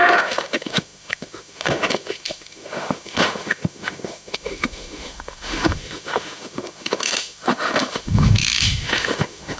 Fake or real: fake